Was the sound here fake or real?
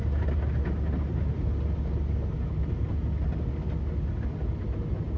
real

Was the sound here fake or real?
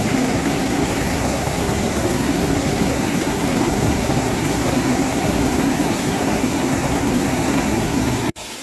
fake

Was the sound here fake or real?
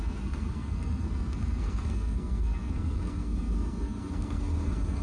fake